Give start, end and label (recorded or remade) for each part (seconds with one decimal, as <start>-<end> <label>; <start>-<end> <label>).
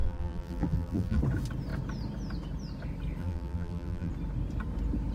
0.0-1.2 remade; 1.2-3.2 recorded; 3.2-4.1 remade; 4.1-5.1 recorded